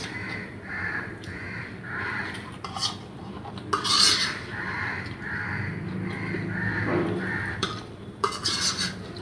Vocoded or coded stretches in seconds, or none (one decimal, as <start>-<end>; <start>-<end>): 0.0-2.8; 7.6-9.2